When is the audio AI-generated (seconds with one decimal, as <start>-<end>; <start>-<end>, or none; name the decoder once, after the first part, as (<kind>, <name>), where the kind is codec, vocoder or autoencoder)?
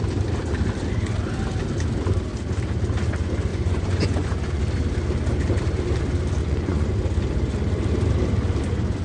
3.5-4.6 (vocoder, Vocos); 6.4-6.9